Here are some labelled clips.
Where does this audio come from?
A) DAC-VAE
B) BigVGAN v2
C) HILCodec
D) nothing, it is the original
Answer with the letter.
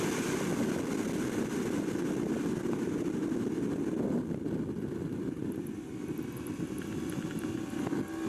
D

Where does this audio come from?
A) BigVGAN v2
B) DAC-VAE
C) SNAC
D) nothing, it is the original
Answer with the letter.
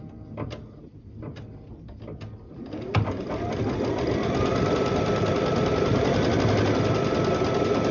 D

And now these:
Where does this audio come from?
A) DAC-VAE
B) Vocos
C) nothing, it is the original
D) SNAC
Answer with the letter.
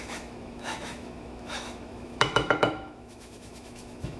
A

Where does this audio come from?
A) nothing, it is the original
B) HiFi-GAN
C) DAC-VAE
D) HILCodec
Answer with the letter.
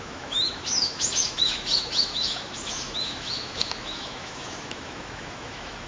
C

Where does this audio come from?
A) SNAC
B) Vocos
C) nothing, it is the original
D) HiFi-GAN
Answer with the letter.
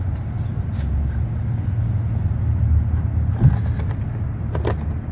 C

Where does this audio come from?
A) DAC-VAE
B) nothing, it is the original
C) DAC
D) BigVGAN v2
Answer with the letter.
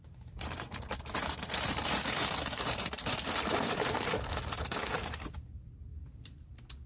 D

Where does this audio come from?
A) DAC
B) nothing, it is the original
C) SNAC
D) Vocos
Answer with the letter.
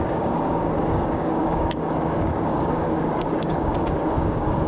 A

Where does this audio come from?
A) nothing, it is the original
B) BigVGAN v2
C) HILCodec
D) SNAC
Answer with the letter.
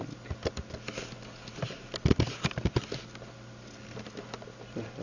A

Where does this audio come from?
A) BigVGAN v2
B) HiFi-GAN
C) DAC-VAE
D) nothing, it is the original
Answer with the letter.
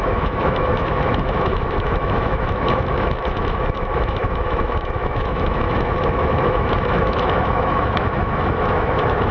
C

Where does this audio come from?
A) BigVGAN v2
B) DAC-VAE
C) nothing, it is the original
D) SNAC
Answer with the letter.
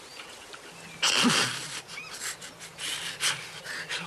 C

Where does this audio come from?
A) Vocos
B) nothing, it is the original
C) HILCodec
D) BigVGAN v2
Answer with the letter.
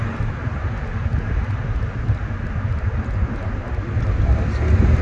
B